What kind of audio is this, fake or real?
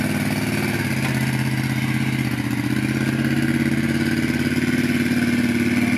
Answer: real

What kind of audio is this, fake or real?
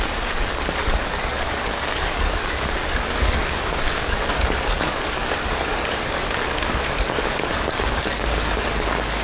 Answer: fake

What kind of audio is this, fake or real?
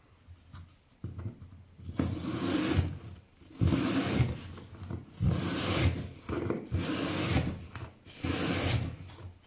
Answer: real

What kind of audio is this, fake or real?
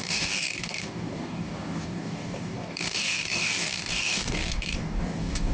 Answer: fake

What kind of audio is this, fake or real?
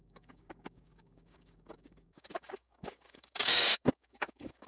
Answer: fake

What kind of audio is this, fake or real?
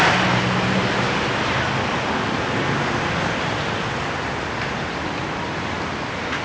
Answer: real